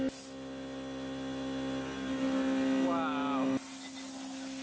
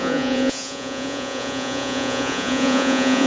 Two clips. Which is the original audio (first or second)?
first